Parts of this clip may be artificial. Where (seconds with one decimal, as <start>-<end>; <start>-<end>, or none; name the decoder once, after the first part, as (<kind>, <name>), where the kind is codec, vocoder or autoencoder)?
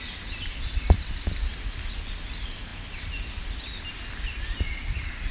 none